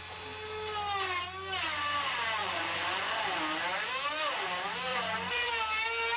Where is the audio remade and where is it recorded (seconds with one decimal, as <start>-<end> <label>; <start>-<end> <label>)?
0.0-2.4 recorded; 2.4-3.2 remade; 3.2-4.9 recorded; 4.9-5.5 remade; 5.5-6.2 recorded